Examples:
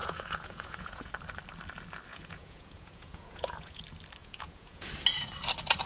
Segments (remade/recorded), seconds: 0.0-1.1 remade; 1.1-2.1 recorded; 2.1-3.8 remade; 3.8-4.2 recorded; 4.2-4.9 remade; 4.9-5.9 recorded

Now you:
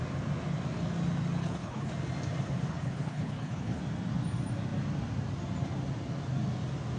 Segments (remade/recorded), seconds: 0.0-1.4 recorded; 1.4-1.9 remade; 1.9-2.7 recorded; 2.7-3.8 remade; 3.8-7.0 recorded

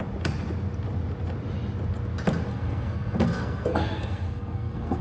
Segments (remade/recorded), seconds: 0.0-2.5 recorded; 2.5-5.0 remade

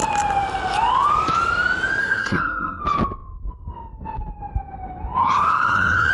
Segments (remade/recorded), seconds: 0.0-2.0 recorded; 2.0-2.8 remade; 2.8-5.2 recorded; 5.2-6.1 remade

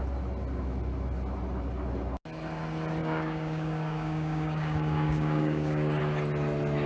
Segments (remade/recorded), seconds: 0.0-3.0 recorded; 3.0-6.0 remade; 6.0-6.9 recorded

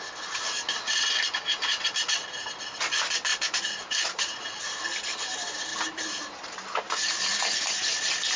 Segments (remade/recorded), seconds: 0.0-3.3 recorded; 3.3-4.6 remade; 4.6-5.7 recorded; 5.7-7.2 remade; 7.2-8.4 recorded

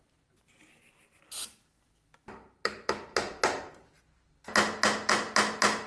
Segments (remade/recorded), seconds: 0.0-5.9 recorded